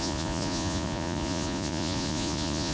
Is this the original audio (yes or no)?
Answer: no